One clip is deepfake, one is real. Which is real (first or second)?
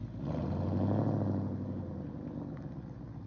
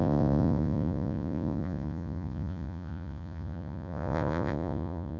first